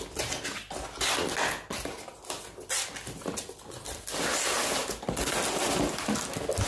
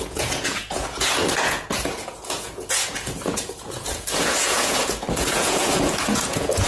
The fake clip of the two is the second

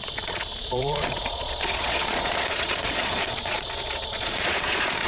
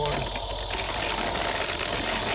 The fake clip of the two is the first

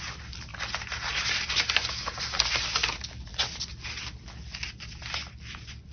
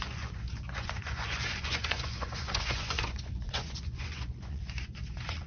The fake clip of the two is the second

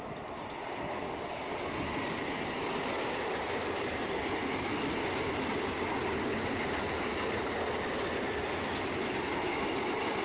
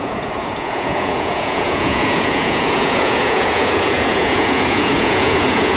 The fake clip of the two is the second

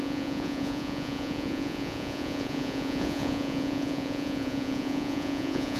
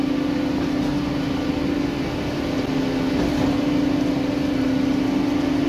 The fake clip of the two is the first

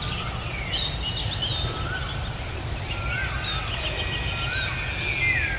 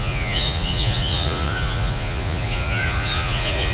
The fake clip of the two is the second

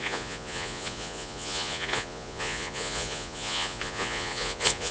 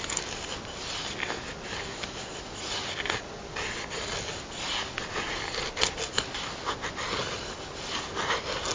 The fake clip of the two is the first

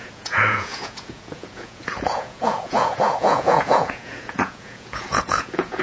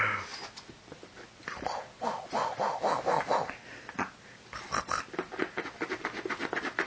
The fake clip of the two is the first